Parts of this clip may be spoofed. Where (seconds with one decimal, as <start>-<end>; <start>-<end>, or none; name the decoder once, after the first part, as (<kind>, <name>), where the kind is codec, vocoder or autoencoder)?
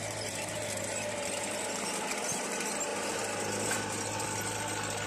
none